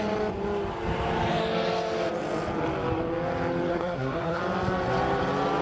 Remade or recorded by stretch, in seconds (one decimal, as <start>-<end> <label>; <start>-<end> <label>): 0.0-3.7 recorded; 3.7-4.4 remade; 4.4-5.6 recorded